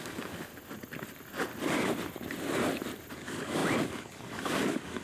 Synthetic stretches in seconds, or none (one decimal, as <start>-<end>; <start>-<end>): 0.0-0.5; 3.1-5.0